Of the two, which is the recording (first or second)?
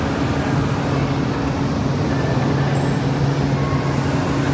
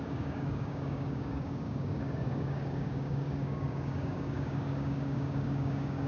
first